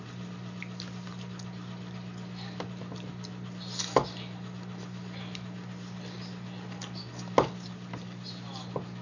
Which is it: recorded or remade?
recorded